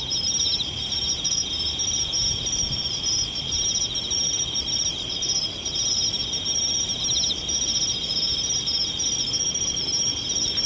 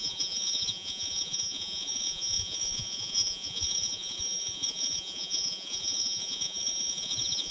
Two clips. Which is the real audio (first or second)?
first